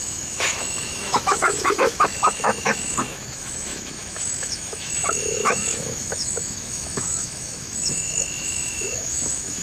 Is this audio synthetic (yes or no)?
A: yes